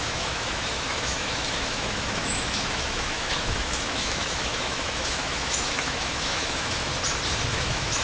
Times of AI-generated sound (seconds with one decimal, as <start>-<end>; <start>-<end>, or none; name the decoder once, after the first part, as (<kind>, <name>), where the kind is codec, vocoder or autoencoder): 0.0-6.9 (autoencoder, DAC-VAE); 7.5-8.0